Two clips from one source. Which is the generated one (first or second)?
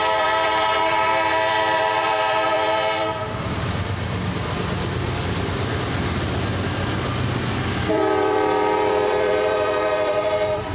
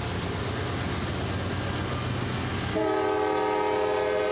first